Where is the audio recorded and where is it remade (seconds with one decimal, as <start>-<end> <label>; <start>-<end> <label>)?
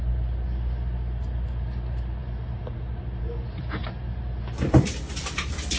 0.0-5.8 recorded